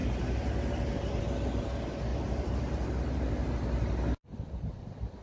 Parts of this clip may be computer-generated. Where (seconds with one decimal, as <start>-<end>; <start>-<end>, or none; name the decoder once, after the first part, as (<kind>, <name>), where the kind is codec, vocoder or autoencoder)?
0.0-1.2 (vocoder, BigVGAN v2); 2.1-3.3